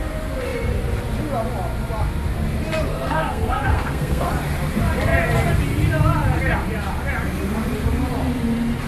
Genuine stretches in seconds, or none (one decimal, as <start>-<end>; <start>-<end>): 0.0-2.9; 4.3-8.9